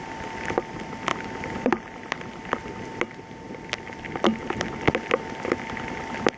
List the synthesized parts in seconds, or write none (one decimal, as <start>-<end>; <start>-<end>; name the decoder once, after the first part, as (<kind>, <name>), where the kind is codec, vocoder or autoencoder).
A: none